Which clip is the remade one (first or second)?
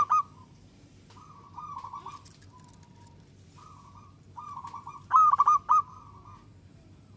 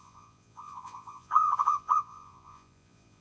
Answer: second